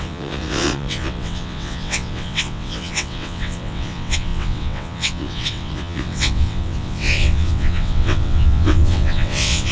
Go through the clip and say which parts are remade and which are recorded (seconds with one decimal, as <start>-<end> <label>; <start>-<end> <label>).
0.0-9.7 remade